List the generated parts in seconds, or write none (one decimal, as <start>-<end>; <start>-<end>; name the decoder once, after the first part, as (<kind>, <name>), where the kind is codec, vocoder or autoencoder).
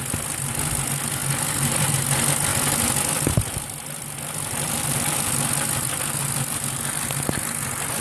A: 1.2-1.9 (vocoder, BigVGAN v2); 2.5-7.2